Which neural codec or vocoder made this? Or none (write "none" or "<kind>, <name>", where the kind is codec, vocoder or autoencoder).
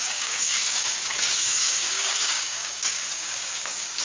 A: codec, DAC